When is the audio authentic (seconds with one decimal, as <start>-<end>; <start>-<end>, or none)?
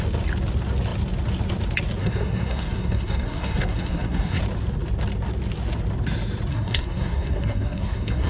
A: 0.0-2.0; 4.4-6.5